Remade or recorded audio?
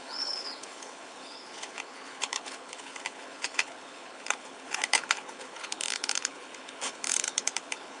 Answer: remade